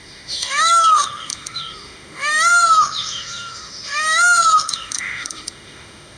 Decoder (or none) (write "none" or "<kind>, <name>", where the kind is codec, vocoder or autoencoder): autoencoder, DAC-VAE